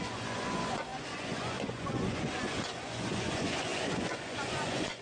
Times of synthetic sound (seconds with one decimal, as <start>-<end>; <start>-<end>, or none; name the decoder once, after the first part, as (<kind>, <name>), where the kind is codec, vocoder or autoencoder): 0.0-5.0 (vocoder, Vocos)